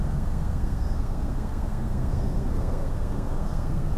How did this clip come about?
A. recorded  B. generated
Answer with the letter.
B